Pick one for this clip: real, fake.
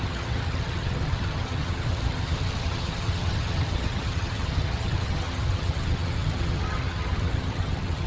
fake